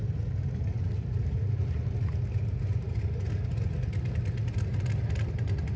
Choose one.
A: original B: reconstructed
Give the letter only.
A